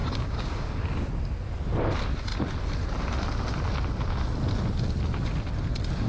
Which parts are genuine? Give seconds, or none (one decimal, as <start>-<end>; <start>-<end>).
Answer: 0.7-6.1